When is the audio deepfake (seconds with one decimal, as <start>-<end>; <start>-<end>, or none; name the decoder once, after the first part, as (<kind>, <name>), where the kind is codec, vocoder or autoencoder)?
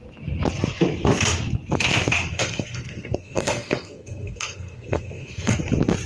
2.3-5.6 (codec, SNAC)